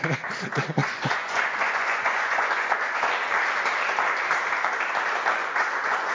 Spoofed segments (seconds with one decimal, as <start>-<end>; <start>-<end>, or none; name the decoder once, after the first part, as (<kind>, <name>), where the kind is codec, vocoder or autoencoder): 0.8-2.8 (vocoder, Vocos); 5.4-6.1